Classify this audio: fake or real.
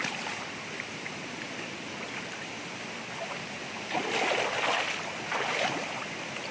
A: real